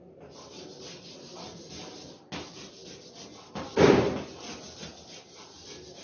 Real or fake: real